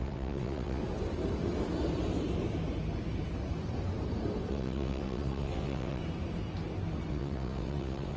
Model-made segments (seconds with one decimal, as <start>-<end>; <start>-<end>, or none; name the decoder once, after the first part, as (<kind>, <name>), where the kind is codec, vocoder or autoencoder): 0.0-0.8 (vocoder, WaveNeXt); 4.5-6.0; 7.1-8.2